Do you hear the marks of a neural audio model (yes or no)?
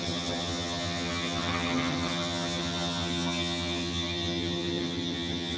yes